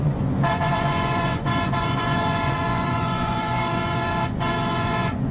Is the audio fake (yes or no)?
yes